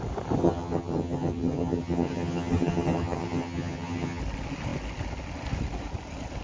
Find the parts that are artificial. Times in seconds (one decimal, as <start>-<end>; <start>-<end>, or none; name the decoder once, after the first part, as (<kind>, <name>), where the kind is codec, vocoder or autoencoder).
0.4-4.2 (vocoder, HiFi-GAN)